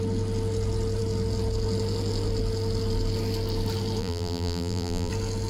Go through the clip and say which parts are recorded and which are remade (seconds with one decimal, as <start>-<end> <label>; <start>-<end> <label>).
0.0-4.0 recorded; 4.0-5.1 remade; 5.1-5.5 recorded